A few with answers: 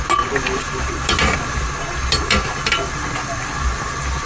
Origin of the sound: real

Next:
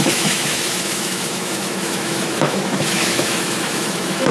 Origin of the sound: fake